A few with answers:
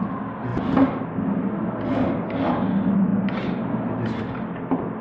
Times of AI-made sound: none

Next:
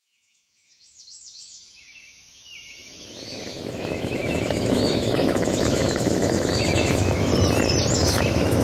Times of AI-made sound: 0.0-7.3 (autoencoder, DAC-VAE); 7.9-8.6

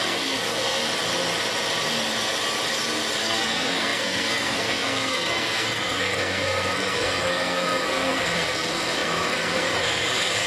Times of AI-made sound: 0.0-0.8 (codec, SNAC); 3.2-10.5